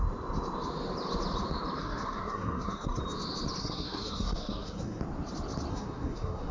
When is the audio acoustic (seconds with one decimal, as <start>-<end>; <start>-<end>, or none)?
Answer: 0.0-1.8; 3.0-3.6; 5.0-5.7